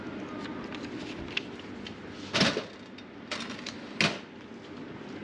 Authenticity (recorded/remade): recorded